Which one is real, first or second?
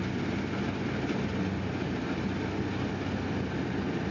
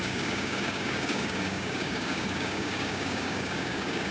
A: first